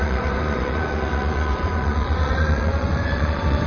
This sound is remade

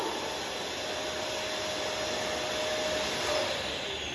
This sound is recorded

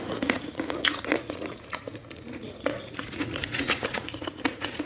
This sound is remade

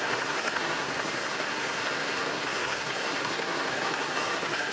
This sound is remade